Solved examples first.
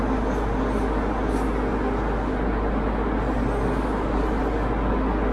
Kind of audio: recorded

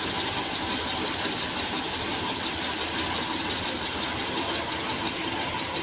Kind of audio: recorded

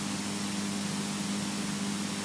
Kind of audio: recorded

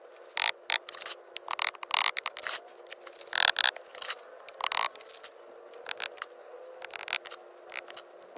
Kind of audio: recorded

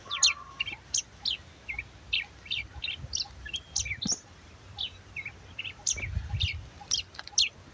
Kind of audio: recorded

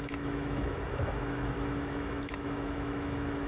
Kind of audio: remade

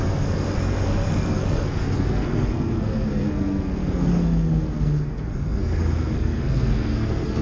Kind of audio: remade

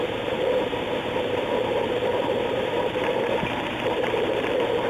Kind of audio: remade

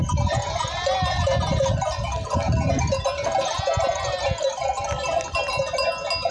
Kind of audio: recorded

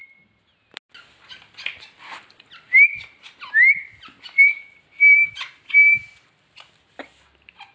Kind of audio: recorded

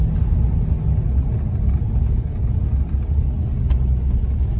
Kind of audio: recorded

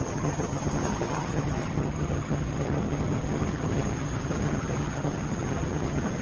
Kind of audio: remade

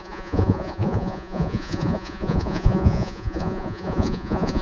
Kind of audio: remade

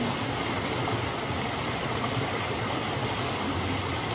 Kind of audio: recorded